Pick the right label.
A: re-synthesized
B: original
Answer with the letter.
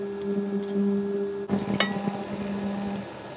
B